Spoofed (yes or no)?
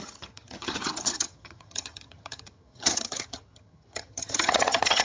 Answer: yes